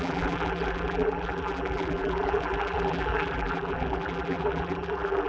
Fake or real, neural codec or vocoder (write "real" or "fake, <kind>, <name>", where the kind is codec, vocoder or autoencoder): fake, vocoder, BigVGAN v2